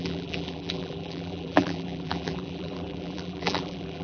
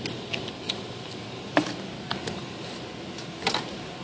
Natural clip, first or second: second